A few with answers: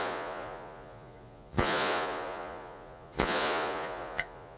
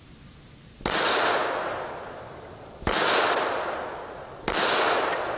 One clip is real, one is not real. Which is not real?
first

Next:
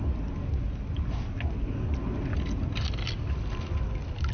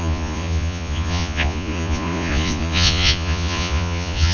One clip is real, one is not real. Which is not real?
second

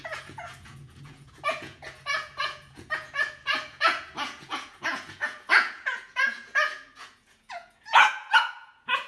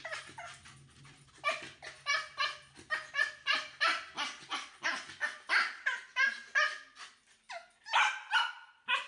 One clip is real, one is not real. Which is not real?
first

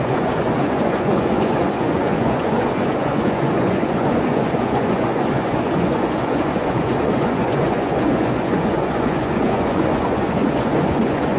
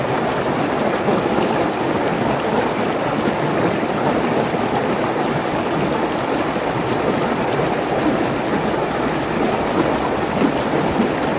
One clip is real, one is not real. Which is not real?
first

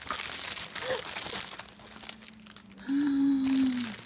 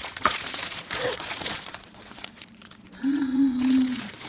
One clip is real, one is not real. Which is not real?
second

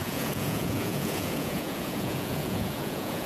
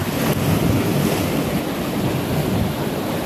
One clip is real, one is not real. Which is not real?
first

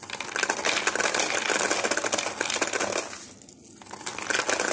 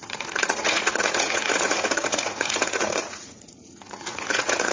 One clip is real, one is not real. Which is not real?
second